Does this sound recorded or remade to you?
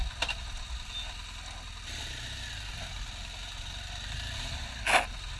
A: recorded